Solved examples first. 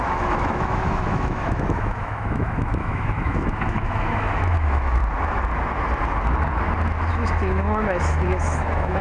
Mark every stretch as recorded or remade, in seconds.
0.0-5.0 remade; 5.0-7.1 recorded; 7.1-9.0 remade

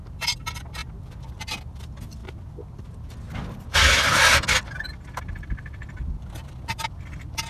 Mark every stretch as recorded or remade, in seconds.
0.0-7.5 recorded

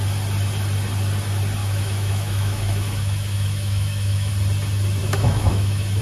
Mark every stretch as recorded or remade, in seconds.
0.0-1.6 recorded; 1.6-4.3 remade; 4.3-5.0 recorded; 5.0-6.0 remade

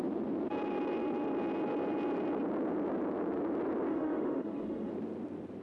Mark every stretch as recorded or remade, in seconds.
0.0-3.9 recorded; 3.9-4.9 remade; 4.9-5.6 recorded

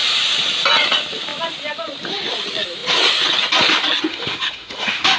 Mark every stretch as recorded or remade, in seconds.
0.0-4.1 recorded; 4.1-5.2 remade

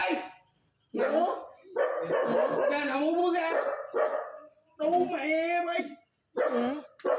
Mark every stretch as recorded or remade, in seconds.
0.0-7.2 recorded

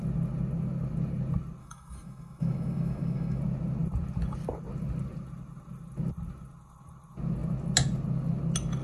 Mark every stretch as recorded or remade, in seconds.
0.0-1.6 recorded; 1.6-3.4 remade; 3.4-8.8 recorded